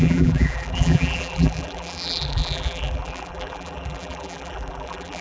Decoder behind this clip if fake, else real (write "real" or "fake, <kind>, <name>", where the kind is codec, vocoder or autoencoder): fake, vocoder, BigVGAN v2